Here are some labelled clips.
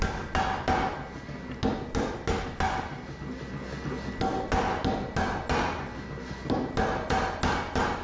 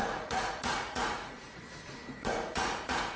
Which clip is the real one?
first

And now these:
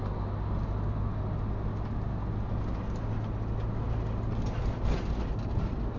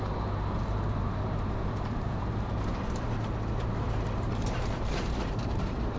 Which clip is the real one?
first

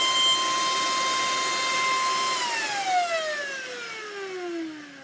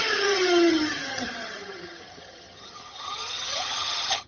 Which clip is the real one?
first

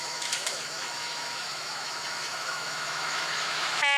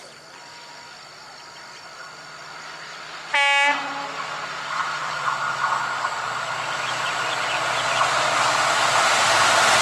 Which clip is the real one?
second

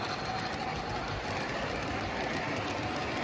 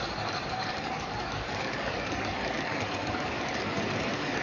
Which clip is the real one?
first